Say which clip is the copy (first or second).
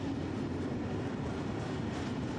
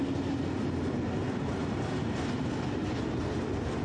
first